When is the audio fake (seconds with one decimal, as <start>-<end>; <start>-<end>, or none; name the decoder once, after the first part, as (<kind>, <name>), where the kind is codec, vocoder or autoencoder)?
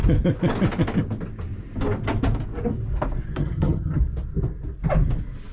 3.4-4.0 (vocoder, HiFi-GAN)